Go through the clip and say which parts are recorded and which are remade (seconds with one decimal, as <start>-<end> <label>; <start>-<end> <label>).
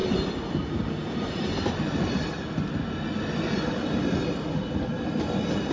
0.0-5.7 recorded